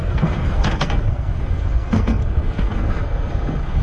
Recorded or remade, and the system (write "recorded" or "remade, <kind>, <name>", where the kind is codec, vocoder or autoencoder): remade, codec, SNAC